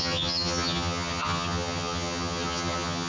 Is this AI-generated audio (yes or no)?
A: yes